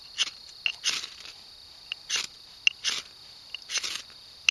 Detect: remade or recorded recorded